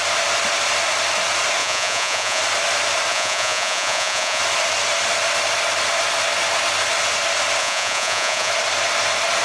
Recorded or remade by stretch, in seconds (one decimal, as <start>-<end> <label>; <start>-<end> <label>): 0.0-1.6 recorded; 1.6-2.4 remade; 2.4-3.1 recorded; 3.1-4.4 remade; 4.4-7.6 recorded; 7.6-8.5 remade; 8.5-9.4 recorded